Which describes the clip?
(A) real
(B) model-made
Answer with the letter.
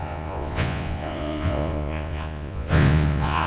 B